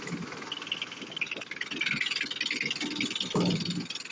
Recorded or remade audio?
recorded